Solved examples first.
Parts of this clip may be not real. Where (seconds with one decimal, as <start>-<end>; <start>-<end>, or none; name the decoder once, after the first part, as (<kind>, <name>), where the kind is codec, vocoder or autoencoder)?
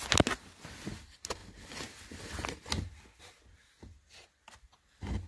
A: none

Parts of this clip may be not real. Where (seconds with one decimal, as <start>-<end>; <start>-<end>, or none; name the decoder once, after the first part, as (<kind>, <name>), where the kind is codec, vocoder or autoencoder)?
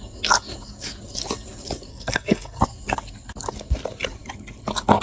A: 1.9-2.6 (codec, SNAC)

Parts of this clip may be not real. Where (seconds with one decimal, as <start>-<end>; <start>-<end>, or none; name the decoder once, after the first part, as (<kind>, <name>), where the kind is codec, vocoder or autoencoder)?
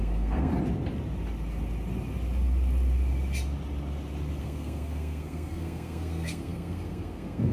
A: 0.0-0.5 (codec, SNAC); 4.4-7.5